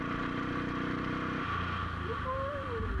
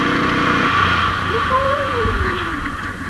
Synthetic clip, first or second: second